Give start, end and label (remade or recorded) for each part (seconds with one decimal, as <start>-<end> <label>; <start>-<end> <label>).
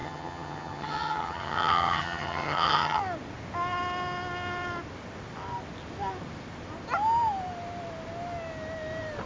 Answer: 0.0-3.0 remade; 3.0-9.3 recorded